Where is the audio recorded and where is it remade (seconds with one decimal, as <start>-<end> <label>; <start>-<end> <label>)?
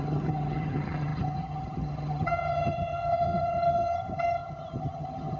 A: 0.0-5.4 remade